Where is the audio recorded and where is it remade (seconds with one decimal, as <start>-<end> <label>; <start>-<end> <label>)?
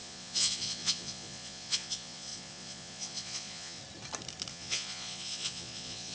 0.0-3.8 remade; 3.8-4.5 recorded; 4.5-6.1 remade